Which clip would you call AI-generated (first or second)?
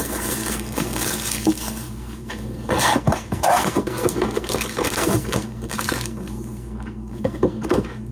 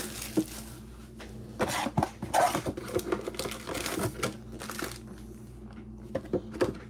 first